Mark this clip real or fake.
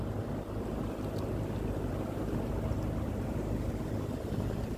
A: real